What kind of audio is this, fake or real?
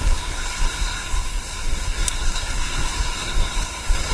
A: fake